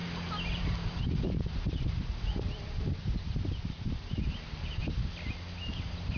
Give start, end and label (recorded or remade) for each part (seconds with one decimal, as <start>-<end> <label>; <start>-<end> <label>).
0.0-0.6 recorded; 0.6-4.8 remade; 4.8-5.7 recorded; 5.7-6.2 remade